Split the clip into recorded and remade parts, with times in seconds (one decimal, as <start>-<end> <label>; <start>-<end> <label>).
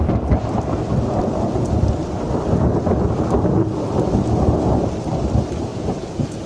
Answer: 0.0-5.7 recorded; 5.7-6.5 remade